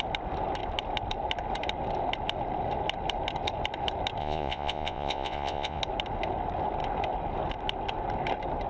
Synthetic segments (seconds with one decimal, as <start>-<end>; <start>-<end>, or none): 4.2-5.8